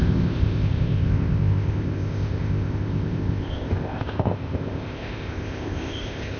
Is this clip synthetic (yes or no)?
yes